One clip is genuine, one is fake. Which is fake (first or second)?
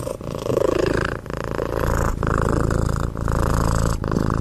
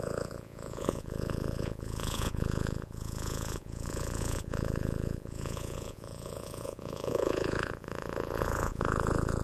second